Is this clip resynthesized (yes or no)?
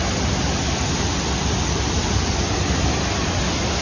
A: no